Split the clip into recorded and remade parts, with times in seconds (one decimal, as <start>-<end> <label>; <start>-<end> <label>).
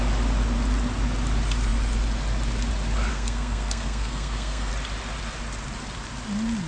0.0-3.1 recorded; 3.1-4.7 remade; 4.7-6.7 recorded